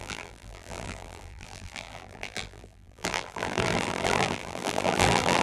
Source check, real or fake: fake